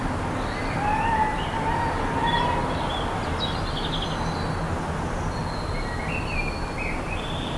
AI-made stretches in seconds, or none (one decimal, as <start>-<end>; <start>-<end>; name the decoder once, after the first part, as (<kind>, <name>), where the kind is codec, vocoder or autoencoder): none